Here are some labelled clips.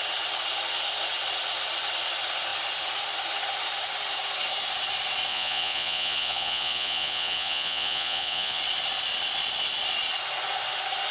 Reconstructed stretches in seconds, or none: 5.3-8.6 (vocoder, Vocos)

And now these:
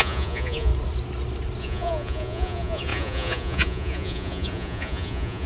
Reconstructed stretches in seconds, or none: 0.0-0.7 (vocoder, Vocos); 1.6-5.5

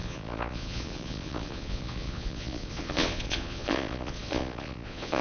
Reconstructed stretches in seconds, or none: 0.0-5.2 (vocoder, Vocos)